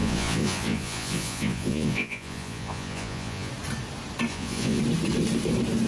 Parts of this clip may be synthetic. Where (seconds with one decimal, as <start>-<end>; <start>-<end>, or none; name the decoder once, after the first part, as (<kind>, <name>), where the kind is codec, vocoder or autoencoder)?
0.0-3.5 (vocoder, Vocos); 4.3-4.8